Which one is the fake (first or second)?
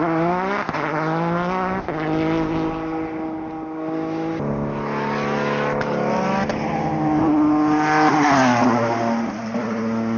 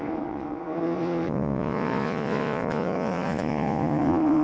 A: second